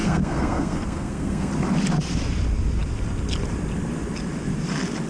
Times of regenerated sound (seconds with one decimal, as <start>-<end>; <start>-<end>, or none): 0.0-1.5